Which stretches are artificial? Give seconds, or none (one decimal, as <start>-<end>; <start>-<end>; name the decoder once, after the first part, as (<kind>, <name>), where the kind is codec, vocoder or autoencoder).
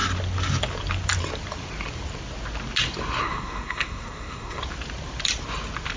3.2-4.6 (codec, SNAC)